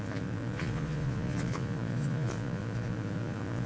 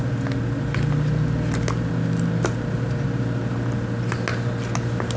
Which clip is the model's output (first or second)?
first